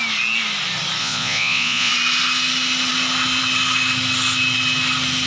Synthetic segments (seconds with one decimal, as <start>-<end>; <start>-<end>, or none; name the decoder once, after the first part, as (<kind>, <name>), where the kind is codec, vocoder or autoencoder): 1.0-1.9 (vocoder, Vocos)